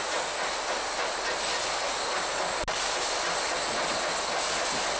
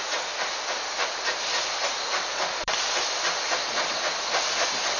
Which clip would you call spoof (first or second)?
second